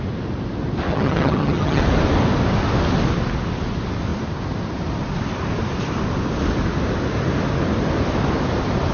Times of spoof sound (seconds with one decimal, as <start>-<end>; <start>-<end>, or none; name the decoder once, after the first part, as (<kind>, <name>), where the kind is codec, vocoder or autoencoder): 0.9-1.8 (vocoder, HiFi-GAN)